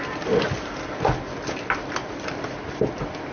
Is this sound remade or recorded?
recorded